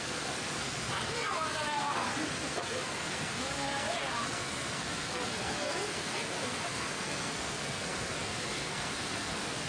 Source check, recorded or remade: remade